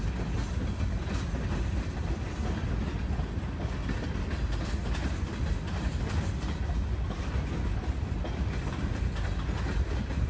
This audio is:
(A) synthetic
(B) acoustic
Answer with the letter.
B